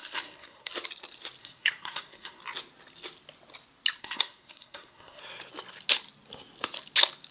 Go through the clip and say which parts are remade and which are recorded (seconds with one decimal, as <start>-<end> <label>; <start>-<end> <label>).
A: 0.0-0.7 remade; 0.7-1.4 recorded; 1.4-2.4 remade; 2.4-4.0 recorded; 4.0-5.2 remade; 5.2-7.3 recorded